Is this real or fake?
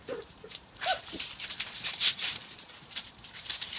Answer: fake